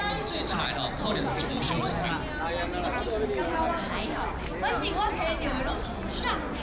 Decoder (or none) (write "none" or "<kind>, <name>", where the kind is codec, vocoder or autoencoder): none